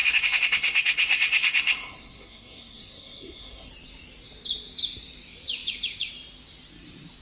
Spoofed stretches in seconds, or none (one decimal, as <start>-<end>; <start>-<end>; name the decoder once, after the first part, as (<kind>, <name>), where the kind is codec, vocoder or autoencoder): 0.0-3.7 (codec, SNAC)